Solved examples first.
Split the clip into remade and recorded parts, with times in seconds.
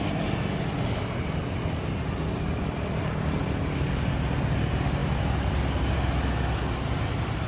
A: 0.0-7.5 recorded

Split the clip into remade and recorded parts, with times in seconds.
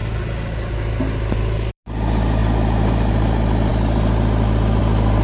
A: 0.0-5.2 recorded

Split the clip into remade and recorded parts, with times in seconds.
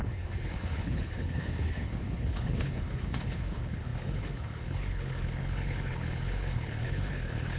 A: 0.0-7.6 remade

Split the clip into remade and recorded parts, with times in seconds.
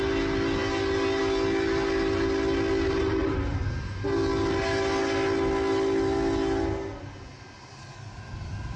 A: 0.0-8.8 recorded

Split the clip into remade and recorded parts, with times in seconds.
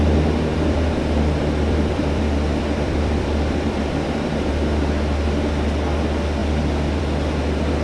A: 0.0-0.5 recorded; 0.5-4.5 remade; 4.5-7.8 recorded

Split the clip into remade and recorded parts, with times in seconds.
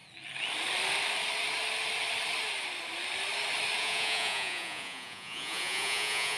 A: 0.0-3.8 recorded; 3.8-6.4 remade